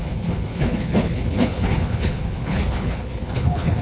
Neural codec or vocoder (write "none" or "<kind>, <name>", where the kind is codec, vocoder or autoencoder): codec, HILCodec